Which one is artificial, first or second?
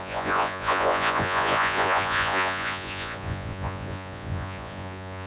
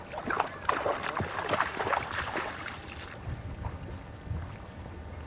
first